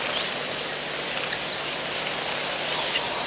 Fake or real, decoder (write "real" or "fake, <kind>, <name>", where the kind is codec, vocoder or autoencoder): real